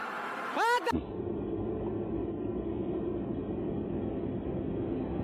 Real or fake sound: real